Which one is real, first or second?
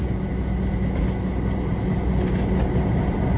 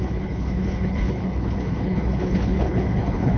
first